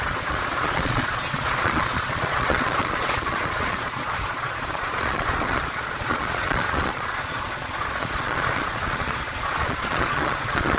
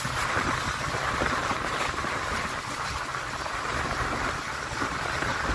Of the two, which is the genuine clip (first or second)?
second